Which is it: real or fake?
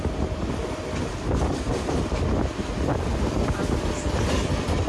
real